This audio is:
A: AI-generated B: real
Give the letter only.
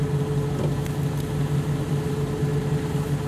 B